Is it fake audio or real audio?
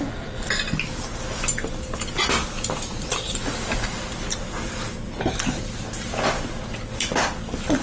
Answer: real